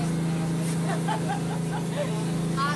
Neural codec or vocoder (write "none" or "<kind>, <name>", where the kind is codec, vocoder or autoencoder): none